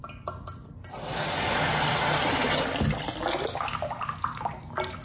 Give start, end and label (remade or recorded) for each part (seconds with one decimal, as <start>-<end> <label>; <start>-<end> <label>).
0.0-5.0 recorded